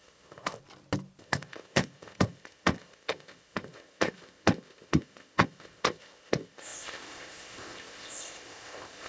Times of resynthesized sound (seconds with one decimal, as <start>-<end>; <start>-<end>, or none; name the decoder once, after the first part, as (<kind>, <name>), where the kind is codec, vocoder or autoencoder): 0.0-0.6 (codec, ZipCodec); 1.2-9.1